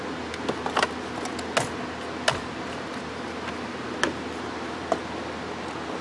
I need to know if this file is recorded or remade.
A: recorded